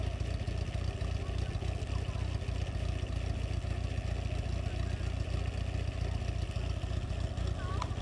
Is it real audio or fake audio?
real